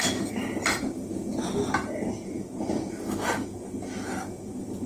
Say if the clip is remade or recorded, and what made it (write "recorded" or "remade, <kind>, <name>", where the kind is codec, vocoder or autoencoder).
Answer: remade, vocoder, BigVGAN v2